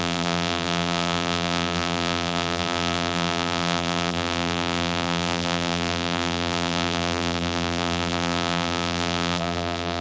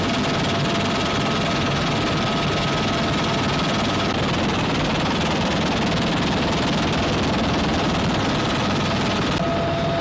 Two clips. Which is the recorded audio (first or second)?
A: second